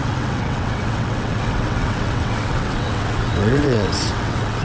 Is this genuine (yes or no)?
no